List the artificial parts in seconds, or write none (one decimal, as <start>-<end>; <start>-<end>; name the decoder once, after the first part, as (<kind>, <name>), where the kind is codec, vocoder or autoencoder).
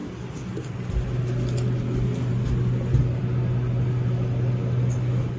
none